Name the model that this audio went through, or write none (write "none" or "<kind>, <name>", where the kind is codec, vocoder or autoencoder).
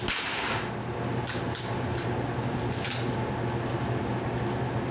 none